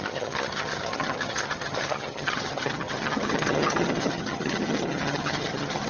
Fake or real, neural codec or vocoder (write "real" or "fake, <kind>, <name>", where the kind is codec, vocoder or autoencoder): fake, vocoder, HiFi-GAN